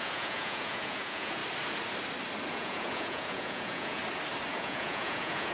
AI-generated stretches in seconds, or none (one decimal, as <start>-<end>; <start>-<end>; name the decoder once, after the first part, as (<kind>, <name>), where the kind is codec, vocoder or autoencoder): 0.0-1.4 (vocoder, Vocos); 2.5-4.0; 4.5-5.5